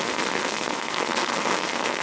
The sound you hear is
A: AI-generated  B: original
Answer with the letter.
A